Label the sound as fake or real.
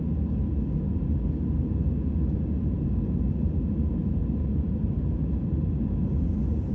real